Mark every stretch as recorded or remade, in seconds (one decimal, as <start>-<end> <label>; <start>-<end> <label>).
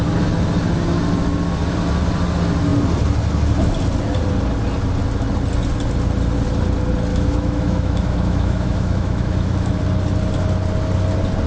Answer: 0.0-7.1 recorded; 7.1-9.8 remade; 9.8-11.5 recorded